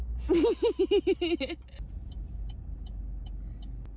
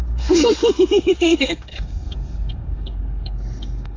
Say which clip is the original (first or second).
first